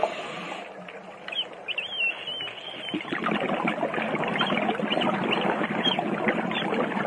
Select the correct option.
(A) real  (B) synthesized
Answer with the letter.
A